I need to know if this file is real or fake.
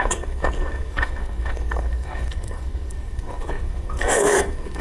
fake